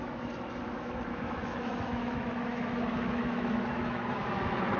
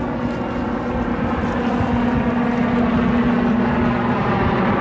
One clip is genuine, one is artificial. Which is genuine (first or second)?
second